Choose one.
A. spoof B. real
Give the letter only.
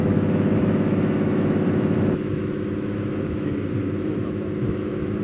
A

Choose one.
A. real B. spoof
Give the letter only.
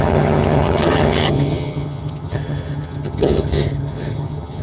B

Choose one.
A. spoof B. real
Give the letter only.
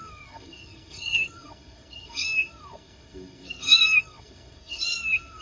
A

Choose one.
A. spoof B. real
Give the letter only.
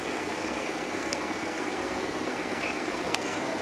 A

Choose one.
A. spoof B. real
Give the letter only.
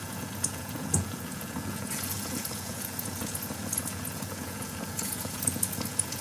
A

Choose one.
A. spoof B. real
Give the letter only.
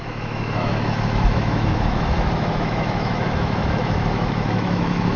A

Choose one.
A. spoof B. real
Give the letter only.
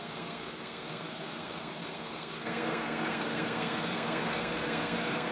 A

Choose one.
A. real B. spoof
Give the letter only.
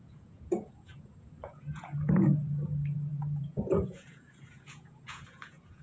B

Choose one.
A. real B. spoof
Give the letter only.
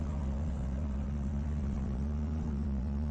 B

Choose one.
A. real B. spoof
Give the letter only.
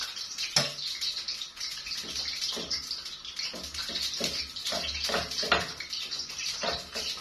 A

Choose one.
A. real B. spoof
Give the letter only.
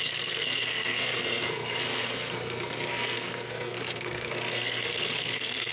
B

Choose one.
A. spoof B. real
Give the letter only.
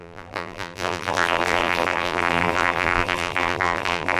A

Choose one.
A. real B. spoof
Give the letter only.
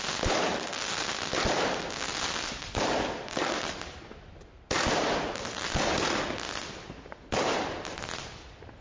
A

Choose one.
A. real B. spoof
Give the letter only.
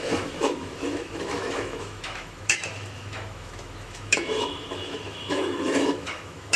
B